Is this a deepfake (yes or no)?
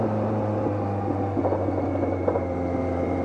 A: no